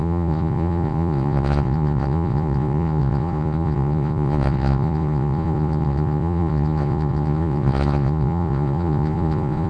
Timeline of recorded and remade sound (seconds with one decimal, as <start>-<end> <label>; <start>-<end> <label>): 0.0-9.7 remade